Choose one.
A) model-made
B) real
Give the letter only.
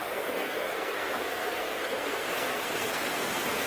A